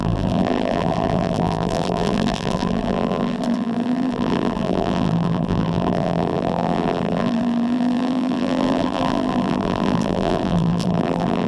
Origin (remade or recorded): remade